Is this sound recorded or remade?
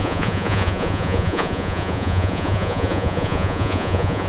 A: remade